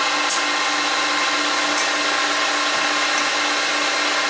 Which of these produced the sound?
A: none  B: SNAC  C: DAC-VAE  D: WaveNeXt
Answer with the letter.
A